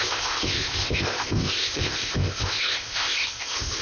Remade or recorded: remade